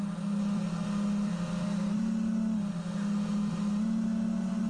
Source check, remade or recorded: recorded